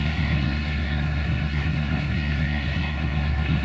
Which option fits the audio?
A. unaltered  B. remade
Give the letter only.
B